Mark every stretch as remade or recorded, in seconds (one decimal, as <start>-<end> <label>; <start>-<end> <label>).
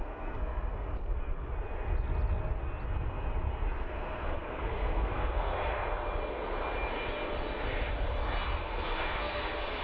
0.0-1.5 remade; 1.5-3.8 recorded; 3.8-5.5 remade; 5.5-8.6 recorded; 8.6-9.8 remade